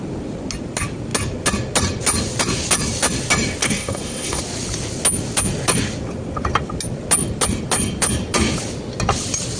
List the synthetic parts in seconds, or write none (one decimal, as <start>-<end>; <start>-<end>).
3.6-4.4